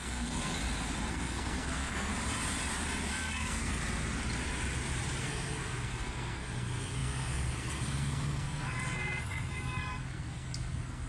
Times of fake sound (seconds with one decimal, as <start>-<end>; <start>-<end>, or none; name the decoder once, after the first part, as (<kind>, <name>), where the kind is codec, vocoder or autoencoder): 0.0-0.6 (codec, SNAC); 1.1-2.1; 3.1-3.8; 5.2-11.1